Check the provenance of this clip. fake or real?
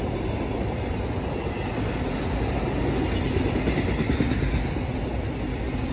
real